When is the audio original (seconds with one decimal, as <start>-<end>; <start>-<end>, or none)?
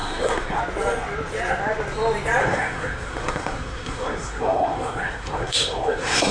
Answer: 0.6-2.4